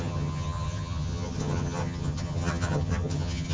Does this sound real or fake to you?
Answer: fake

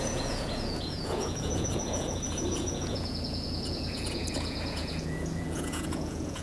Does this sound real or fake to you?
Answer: fake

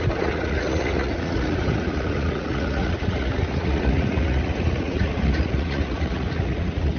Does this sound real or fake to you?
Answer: fake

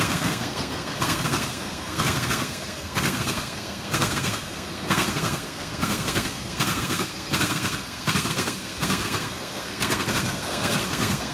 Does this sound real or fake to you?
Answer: fake